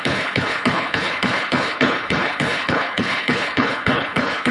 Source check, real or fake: fake